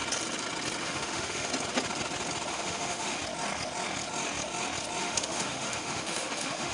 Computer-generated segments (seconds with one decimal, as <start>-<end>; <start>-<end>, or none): 0.8-1.5; 2.5-3.2; 5.0-6.7